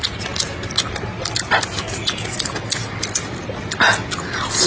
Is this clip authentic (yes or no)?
yes